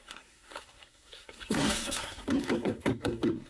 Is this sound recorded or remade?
remade